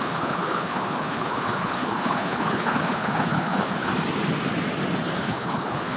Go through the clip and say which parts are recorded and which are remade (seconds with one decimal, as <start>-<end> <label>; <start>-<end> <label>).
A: 0.0-3.9 remade; 3.9-5.2 recorded; 5.2-6.0 remade